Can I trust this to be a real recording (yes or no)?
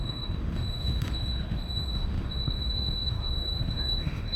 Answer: no